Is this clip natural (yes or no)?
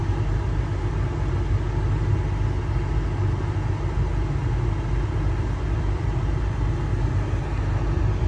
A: yes